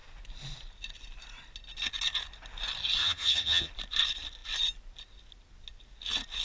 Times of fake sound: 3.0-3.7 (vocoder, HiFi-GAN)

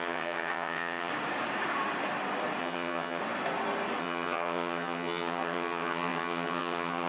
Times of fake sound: 0.0-1.1 (vocoder, HiFi-GAN); 2.6-3.2; 4.0-7.1

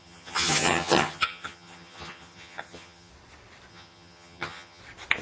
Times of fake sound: 0.0-3.1 (vocoder, HiFi-GAN); 3.7-4.8

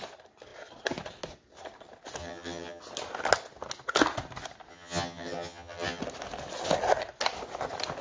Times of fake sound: 2.2-2.8 (vocoder, HiFi-GAN); 4.7-6.0

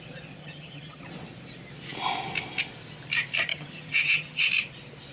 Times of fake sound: 0.4-1.0 (vocoder, HiFi-GAN); 3.5-4.5